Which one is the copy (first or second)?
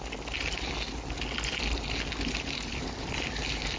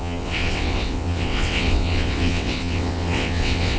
second